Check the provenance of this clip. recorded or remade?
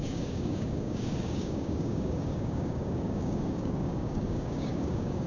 remade